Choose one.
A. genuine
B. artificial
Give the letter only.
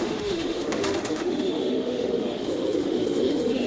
B